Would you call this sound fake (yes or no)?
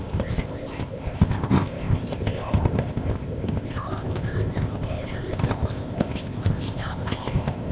yes